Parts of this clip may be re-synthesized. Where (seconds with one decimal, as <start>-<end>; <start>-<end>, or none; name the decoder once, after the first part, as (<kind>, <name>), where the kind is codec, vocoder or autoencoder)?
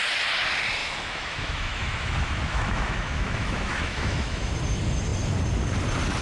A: 0.8-4.5 (autoencoder, DAC-VAE)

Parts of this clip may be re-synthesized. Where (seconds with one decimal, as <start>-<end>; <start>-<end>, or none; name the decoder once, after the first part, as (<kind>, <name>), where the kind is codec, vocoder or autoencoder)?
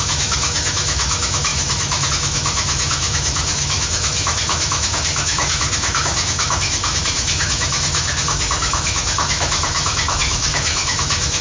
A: 0.0-11.4 (autoencoder, DAC-VAE)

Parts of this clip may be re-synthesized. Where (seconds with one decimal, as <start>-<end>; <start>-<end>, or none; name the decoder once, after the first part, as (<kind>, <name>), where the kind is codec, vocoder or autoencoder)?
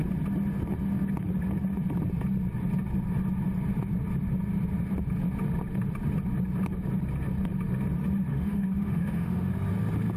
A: 8.3-9.5 (autoencoder, DAC-VAE)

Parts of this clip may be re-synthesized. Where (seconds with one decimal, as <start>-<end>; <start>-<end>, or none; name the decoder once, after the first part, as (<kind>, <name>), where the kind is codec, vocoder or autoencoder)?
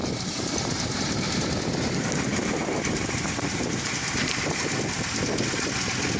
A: none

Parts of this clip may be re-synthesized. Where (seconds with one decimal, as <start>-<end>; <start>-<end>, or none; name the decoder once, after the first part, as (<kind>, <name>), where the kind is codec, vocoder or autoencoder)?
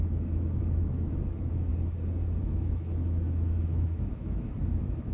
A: 0.0-1.7 (autoencoder, DAC-VAE); 2.4-5.1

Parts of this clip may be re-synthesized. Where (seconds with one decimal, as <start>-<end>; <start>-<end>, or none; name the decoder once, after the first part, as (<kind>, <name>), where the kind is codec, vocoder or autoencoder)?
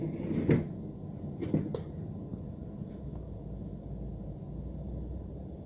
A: none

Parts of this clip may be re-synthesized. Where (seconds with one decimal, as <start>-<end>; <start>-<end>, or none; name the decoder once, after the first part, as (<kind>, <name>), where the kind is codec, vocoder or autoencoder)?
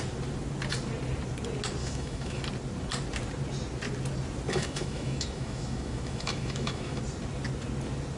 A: 1.8-2.4 (autoencoder, DAC-VAE); 4.5-7.0